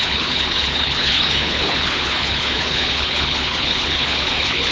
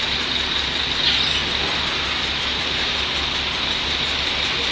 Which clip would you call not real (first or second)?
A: first